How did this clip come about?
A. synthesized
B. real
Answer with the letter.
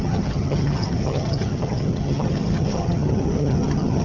A